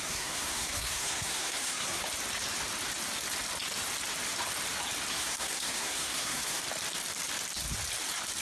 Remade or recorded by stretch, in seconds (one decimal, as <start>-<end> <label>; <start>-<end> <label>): 0.0-2.0 remade; 2.0-5.1 recorded; 5.1-6.6 remade; 6.6-8.4 recorded